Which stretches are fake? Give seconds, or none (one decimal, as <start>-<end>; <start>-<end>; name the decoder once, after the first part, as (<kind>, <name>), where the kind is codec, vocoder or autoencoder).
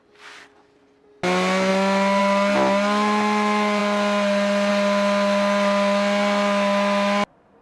none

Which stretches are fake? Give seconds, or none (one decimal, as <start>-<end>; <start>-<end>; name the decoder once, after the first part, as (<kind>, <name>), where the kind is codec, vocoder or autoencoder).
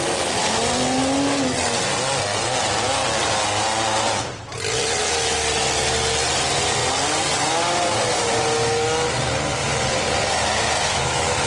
10.9-11.5 (autoencoder, DAC-VAE)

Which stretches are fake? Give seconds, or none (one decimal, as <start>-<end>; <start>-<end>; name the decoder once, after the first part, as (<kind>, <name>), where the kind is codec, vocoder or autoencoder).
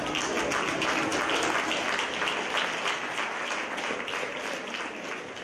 none